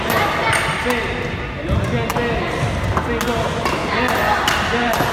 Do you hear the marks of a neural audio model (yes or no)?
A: no